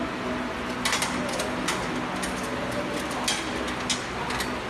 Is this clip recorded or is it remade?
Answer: recorded